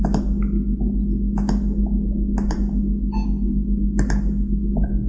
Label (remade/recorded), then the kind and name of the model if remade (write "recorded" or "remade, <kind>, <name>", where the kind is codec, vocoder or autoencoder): recorded